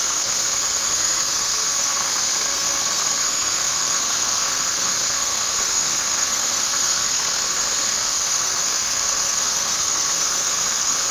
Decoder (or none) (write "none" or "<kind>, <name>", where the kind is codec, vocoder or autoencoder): codec, SNAC